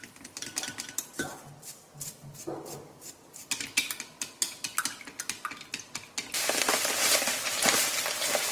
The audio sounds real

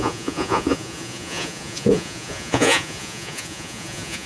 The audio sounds fake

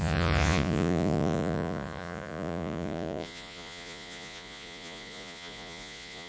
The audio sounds fake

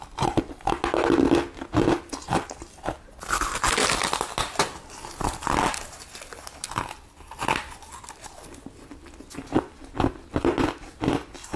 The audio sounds real